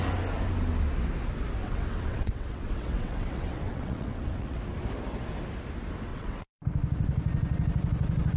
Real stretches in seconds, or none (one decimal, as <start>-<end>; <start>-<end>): 0.0-1.6; 4.6-6.1; 6.6-8.4